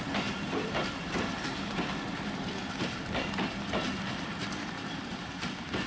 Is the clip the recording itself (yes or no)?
no